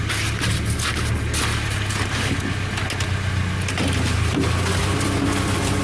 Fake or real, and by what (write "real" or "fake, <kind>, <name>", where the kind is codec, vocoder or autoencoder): real